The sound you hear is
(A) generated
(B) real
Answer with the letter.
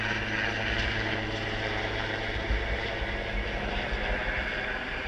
B